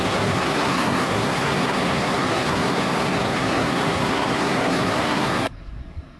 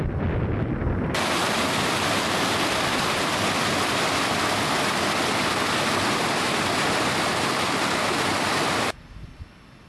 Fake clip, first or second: first